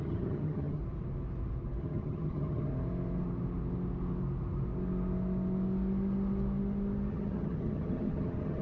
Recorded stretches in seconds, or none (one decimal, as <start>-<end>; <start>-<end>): 0.8-1.8; 2.7-7.1